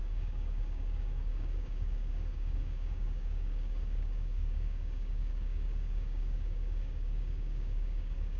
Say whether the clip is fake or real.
fake